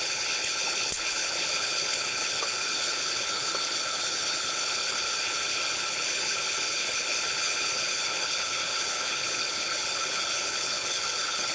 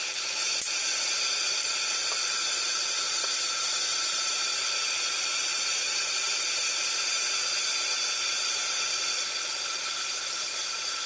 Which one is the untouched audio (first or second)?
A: second